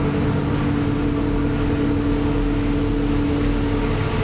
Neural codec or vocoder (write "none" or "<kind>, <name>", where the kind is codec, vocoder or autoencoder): none